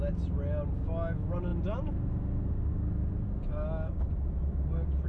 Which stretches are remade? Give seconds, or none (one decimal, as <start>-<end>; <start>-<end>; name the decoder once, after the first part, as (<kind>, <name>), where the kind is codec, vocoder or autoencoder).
none